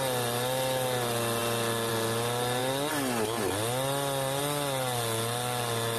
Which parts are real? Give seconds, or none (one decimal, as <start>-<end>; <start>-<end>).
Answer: 0.0-6.0